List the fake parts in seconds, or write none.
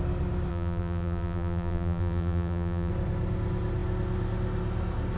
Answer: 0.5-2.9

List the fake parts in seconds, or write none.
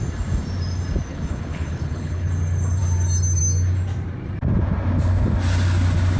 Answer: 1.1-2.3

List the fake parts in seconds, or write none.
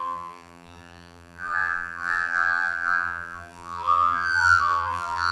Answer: 0.0-5.3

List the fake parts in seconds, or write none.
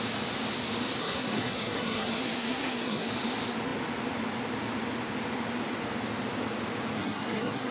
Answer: 1.0-3.1; 7.0-7.7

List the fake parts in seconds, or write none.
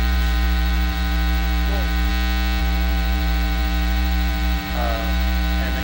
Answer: 0.0-2.1; 2.6-5.8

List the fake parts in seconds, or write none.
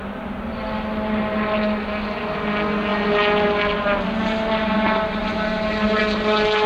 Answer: 5.2-6.0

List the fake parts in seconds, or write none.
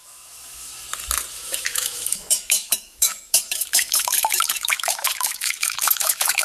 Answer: 0.0-0.7; 1.3-6.4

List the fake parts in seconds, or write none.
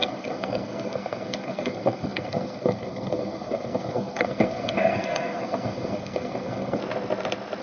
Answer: 0.0-6.8